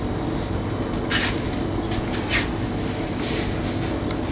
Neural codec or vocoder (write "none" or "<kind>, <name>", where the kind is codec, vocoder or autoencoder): none